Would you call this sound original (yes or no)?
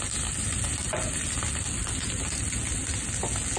yes